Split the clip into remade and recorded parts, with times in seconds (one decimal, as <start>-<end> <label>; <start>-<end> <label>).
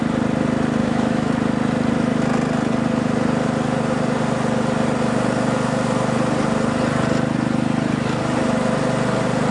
0.0-0.8 recorded; 0.8-1.3 remade; 1.3-9.5 recorded